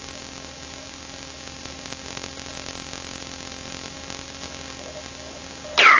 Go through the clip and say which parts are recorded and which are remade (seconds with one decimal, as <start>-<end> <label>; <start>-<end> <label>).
0.0-6.0 recorded